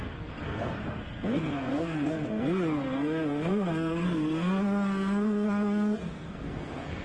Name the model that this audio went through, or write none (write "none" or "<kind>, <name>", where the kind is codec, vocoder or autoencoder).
codec, SNAC